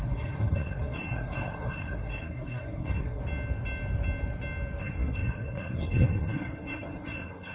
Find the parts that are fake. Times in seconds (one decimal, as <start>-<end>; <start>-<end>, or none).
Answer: 0.0-3.2; 4.8-7.5